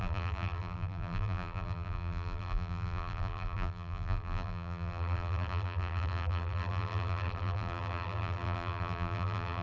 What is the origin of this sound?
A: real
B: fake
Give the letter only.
B